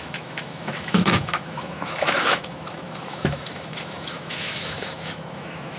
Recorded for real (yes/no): no